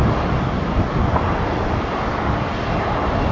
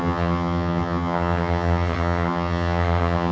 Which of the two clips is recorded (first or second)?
first